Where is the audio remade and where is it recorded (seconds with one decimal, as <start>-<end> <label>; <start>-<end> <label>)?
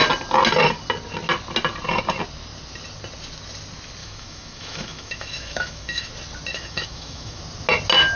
0.0-4.0 recorded; 4.0-6.1 remade; 6.1-6.5 recorded; 6.5-7.4 remade; 7.4-8.2 recorded